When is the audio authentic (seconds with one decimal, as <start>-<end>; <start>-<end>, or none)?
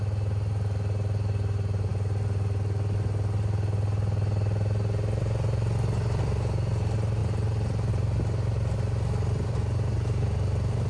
0.0-7.2; 7.9-10.9